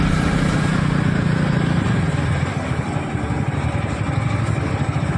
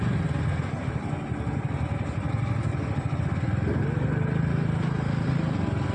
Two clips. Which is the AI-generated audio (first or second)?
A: first